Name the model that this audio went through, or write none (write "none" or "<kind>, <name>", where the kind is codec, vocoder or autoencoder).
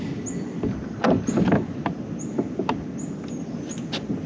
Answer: none